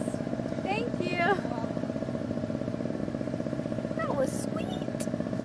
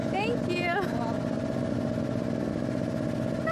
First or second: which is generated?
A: first